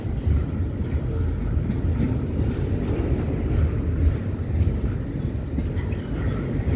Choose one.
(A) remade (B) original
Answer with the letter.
B